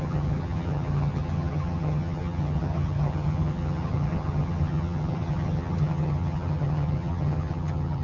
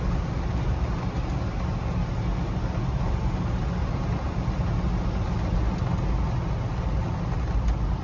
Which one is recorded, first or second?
second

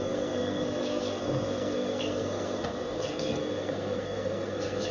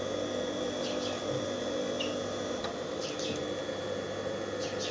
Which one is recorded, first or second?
second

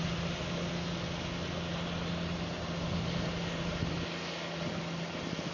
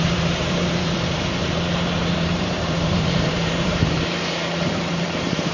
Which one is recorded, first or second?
first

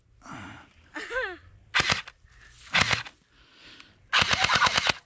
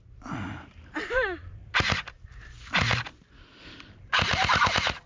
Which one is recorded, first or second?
first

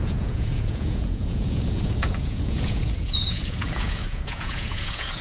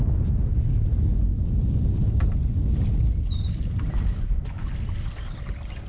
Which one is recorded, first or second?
second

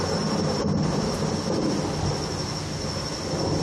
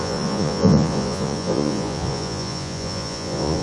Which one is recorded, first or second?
first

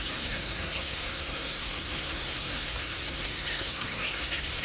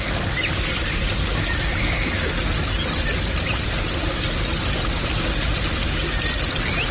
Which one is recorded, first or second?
second